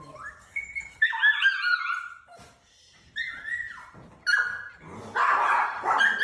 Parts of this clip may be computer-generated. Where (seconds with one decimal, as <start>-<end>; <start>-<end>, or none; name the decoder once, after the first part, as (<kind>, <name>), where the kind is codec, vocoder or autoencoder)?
none